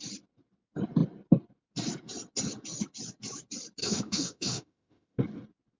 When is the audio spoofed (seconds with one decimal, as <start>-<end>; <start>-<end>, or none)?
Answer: 3.8-5.2